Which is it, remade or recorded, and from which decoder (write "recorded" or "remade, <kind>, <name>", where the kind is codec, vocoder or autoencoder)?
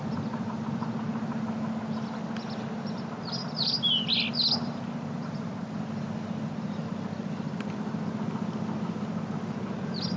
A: recorded